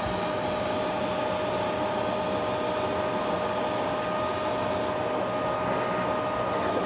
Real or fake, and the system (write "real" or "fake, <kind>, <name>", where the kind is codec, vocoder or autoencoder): real